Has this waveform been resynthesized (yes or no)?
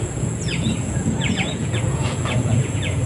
yes